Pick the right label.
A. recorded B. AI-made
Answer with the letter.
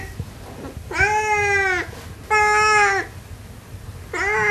A